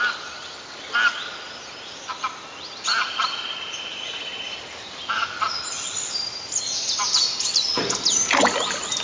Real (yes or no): yes